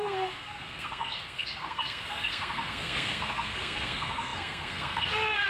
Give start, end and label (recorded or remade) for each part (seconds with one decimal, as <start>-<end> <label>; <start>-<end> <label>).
0.0-5.5 remade